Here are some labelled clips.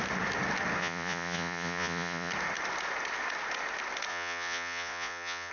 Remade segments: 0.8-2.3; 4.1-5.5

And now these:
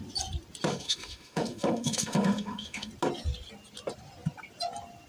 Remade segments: 0.7-2.9

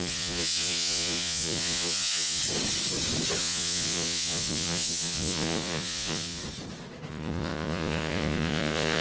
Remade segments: 0.0-2.4; 3.4-6.4; 7.1-9.0

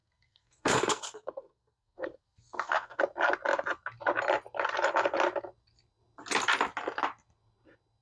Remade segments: 0.0-3.0